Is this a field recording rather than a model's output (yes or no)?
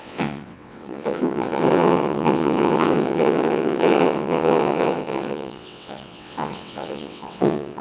no